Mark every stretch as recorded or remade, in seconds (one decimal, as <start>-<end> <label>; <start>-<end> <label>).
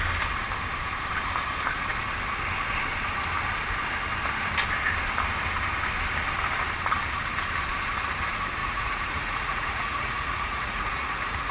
0.0-8.6 recorded; 8.6-11.5 remade